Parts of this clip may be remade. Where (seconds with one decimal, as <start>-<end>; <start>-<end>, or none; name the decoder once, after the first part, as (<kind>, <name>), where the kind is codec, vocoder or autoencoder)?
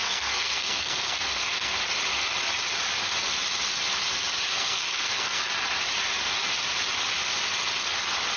0.0-1.8 (codec, SNAC); 4.5-5.4